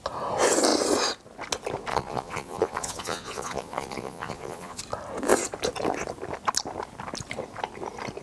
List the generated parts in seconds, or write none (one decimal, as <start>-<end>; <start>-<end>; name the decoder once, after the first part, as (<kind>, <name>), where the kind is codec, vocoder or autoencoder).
1.9-4.8 (vocoder, Vocos)